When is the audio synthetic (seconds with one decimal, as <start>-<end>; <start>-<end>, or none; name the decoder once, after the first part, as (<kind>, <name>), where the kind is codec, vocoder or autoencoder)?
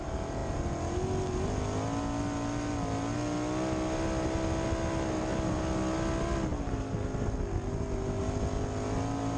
none